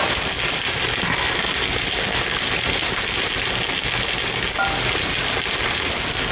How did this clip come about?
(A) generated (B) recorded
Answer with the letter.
B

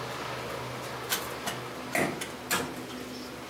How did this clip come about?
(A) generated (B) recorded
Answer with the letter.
B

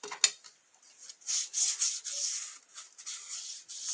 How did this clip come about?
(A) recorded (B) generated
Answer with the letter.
A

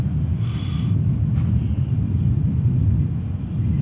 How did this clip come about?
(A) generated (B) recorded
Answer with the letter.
B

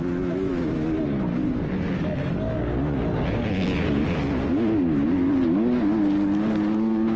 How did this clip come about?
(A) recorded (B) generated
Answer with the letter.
A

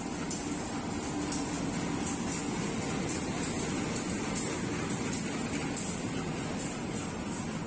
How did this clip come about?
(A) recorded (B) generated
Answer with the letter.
A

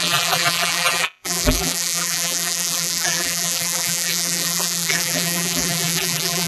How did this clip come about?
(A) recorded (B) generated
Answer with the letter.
B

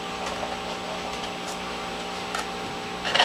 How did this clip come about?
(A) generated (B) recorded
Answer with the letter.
B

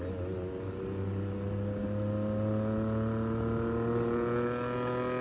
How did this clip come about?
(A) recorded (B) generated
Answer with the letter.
A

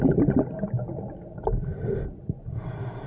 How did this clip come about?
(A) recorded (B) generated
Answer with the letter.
A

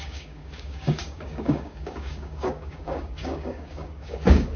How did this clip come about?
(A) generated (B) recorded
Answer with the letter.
A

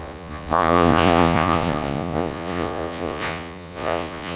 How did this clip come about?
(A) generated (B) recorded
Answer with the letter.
A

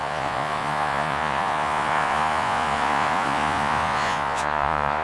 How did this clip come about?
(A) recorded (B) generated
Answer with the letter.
B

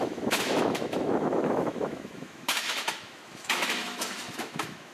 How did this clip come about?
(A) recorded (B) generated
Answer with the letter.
B